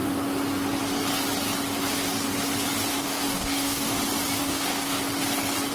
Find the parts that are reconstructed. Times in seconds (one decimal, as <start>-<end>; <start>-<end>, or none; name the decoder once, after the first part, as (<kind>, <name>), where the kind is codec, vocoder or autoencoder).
2.9-4.0 (codec, DAC); 4.4-5.0